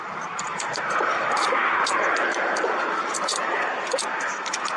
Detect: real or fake fake